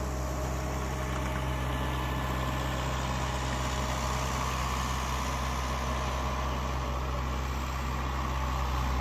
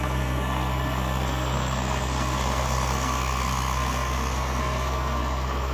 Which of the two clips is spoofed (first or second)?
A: second